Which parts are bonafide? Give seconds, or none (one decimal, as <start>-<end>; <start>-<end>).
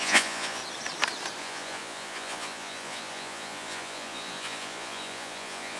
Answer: 0.6-1.4